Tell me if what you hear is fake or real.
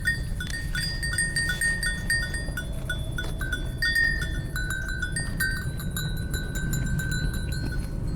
real